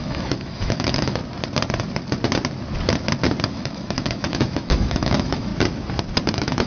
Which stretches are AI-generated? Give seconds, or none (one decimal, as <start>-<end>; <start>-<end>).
0.0-1.2; 3.5-5.5; 6.3-6.7